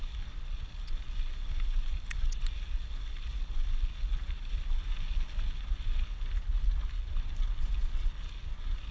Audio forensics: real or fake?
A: real